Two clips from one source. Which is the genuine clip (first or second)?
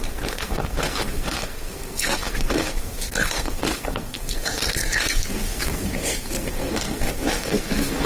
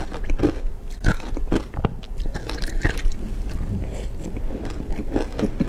second